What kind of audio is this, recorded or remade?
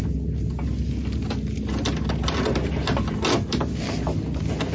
recorded